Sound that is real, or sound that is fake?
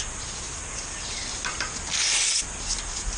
real